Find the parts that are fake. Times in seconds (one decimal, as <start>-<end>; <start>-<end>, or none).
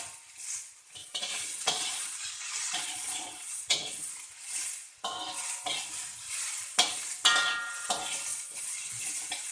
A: 1.0-4.1; 8.3-8.9